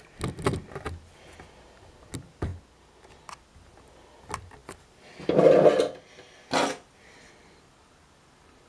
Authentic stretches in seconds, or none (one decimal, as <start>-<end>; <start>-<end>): 0.0-8.7